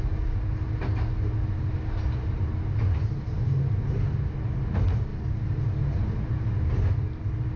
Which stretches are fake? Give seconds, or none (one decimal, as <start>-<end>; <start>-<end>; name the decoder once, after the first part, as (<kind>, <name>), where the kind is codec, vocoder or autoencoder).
none